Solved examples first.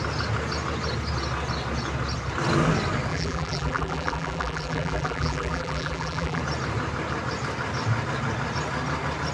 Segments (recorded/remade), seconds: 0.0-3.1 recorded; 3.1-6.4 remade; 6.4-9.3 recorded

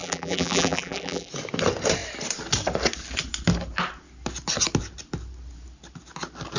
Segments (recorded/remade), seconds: 0.0-1.3 remade; 1.3-6.6 recorded